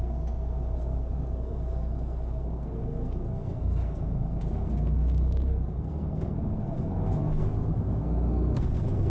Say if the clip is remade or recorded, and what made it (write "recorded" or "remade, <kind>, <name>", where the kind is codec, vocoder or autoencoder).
remade, codec, SNAC